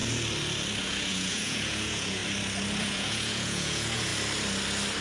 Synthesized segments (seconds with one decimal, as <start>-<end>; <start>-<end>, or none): 0.8-2.2; 2.8-4.1